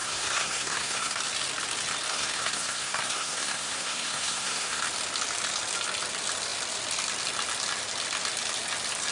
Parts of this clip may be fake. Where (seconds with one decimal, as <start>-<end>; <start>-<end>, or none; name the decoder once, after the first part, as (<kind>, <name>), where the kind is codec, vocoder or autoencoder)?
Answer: 0.0-1.2 (codec, SNAC); 2.1-4.8